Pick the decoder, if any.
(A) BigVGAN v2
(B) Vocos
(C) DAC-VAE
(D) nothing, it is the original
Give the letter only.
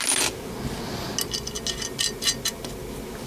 D